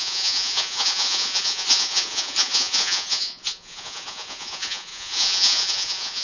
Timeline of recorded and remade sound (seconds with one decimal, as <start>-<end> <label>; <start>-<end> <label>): 0.0-6.2 remade

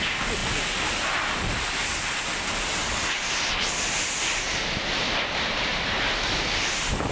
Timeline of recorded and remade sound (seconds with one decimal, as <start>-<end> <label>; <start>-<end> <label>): 0.0-7.1 recorded

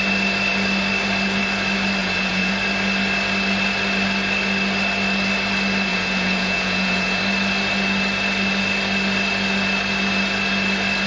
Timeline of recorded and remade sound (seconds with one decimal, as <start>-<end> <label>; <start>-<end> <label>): 0.0-2.0 recorded; 2.0-2.5 remade; 2.5-5.9 recorded; 5.9-7.2 remade; 7.2-11.1 recorded